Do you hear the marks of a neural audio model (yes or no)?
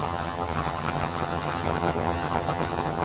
yes